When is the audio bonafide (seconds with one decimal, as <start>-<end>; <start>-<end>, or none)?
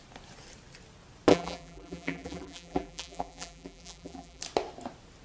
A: 0.0-1.3; 4.4-5.2